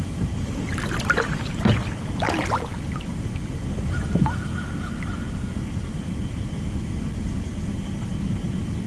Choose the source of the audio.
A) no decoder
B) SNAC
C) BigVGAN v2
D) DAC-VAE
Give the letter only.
A